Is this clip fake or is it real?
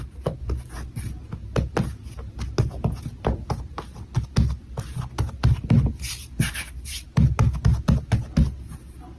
real